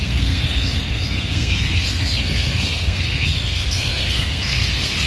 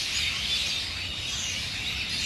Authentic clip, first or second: second